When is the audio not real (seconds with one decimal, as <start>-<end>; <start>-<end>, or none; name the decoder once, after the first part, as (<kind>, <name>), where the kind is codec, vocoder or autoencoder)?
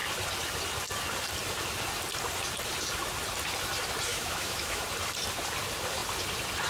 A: 4.1-4.8 (autoencoder, DAC-VAE)